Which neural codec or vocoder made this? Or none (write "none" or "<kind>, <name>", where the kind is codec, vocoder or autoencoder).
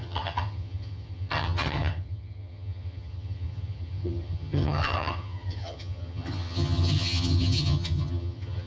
vocoder, HiFi-GAN